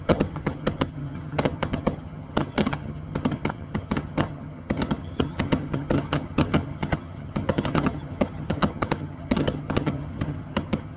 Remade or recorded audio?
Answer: remade